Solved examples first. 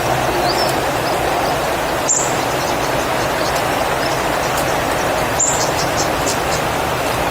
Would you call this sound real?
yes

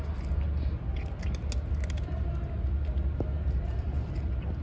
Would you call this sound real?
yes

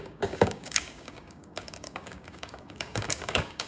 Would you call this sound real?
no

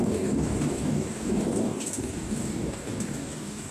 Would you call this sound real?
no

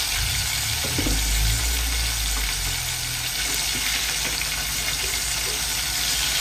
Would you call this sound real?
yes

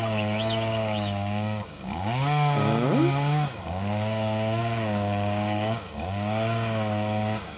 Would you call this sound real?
no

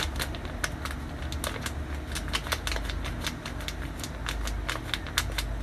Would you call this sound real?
yes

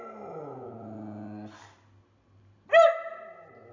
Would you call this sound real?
yes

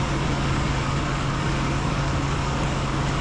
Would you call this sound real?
no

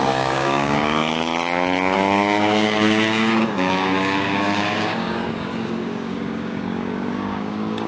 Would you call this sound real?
no